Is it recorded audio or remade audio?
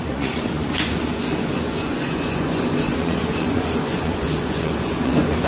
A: remade